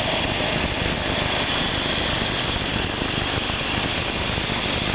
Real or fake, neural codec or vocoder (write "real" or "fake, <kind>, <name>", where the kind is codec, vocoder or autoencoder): real